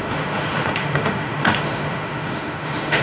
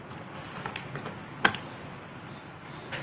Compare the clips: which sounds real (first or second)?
second